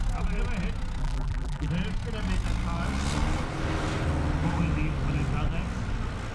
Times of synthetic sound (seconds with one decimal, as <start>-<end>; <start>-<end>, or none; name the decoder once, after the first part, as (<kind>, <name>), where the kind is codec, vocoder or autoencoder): 1.0-1.7 (vocoder, BigVGAN v2)

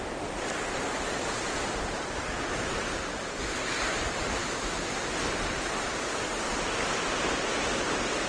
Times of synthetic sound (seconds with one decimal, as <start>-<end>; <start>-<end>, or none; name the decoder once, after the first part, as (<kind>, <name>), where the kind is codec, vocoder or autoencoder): none

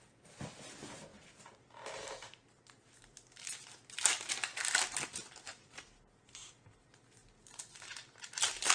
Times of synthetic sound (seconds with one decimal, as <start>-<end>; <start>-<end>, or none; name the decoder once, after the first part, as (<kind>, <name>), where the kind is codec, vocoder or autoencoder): none